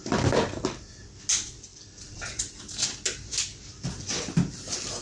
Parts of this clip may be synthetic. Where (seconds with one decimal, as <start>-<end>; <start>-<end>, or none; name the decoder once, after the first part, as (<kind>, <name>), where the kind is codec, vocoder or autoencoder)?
1.7-2.6 (vocoder, BigVGAN v2)